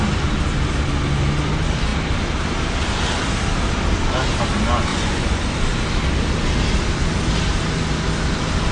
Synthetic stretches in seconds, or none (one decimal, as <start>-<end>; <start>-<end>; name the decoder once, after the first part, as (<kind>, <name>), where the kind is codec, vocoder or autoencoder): 4.9-5.6 (vocoder, Vocos)